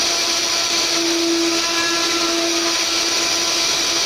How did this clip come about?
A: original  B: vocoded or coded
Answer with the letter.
A